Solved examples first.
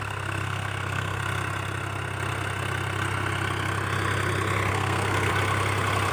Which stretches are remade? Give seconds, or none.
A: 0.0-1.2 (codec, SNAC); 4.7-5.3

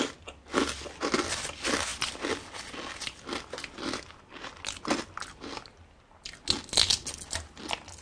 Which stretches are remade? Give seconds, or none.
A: none

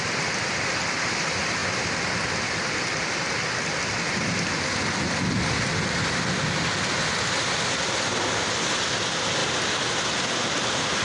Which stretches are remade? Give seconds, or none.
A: none

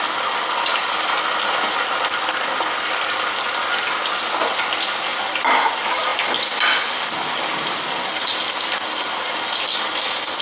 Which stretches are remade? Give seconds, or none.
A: none

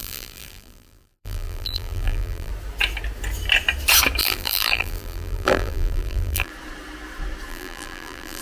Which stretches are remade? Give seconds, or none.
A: 0.0-2.5 (vocoder, BigVGAN v2); 4.2-6.5; 7.5-8.4

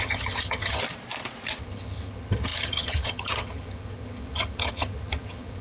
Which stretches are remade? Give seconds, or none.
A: 0.0-0.8 (vocoder, HiFi-GAN); 1.6-5.6